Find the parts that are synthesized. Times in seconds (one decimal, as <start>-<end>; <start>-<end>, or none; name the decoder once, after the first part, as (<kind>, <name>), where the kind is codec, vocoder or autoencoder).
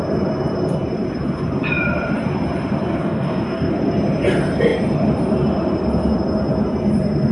3.0-3.7 (codec, DAC)